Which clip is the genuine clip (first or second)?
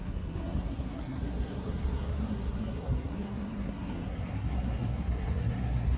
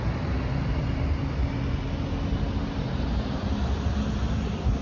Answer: second